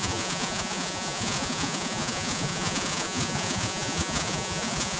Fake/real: fake